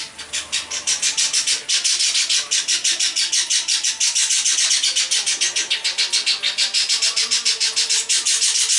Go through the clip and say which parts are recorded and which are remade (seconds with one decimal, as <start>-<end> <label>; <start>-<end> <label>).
0.0-8.8 recorded